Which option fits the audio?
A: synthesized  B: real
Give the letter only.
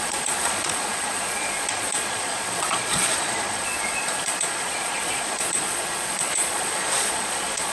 A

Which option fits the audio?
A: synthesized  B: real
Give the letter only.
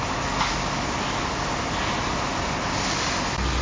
B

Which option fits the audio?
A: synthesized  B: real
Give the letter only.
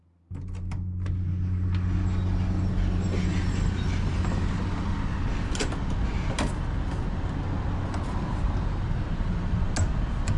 B